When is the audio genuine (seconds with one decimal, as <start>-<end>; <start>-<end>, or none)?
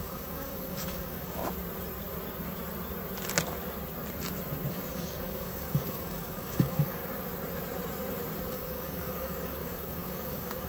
1.4-4.7; 7.0-8.5